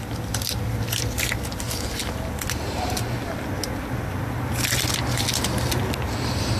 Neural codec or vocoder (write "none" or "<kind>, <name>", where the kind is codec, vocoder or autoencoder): none